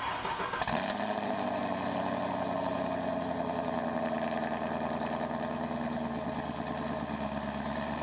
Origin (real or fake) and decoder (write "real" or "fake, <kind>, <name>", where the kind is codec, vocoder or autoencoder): real